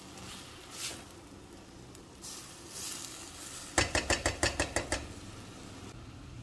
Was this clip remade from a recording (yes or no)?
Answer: no